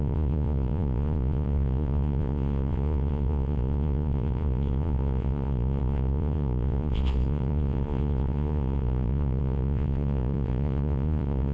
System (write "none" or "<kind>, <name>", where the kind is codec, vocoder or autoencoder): vocoder, Vocos